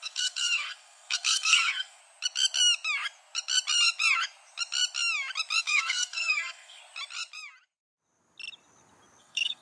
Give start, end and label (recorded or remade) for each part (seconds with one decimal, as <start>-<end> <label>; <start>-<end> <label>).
0.0-2.0 remade; 2.0-5.6 recorded; 5.6-6.8 remade; 6.8-9.2 recorded; 9.2-9.6 remade